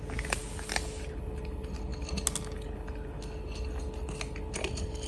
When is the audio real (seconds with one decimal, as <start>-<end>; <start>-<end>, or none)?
0.0-5.1